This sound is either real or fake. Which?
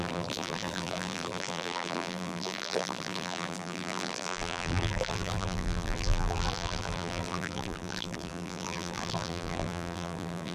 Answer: fake